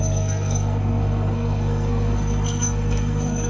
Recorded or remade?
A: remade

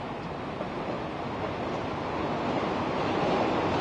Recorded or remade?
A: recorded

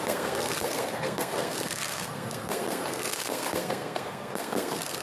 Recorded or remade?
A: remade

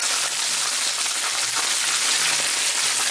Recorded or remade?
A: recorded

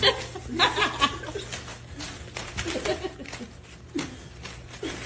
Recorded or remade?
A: recorded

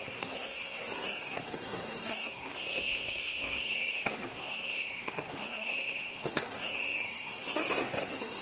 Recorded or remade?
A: remade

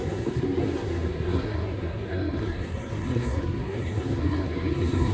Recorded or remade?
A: remade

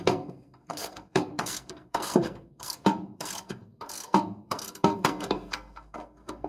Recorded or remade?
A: remade